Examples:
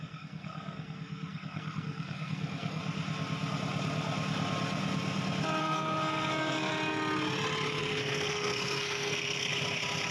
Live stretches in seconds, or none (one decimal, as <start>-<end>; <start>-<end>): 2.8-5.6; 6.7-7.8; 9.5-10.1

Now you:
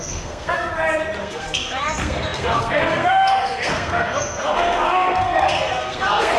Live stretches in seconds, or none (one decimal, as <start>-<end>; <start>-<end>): 0.7-1.2

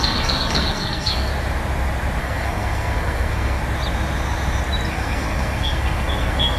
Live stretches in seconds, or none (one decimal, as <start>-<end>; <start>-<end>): 1.3-2.2; 3.6-4.9

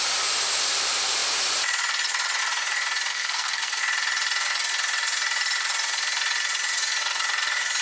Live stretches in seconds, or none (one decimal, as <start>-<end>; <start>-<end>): 0.0-3.1; 3.8-7.8